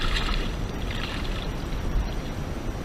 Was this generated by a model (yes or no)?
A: yes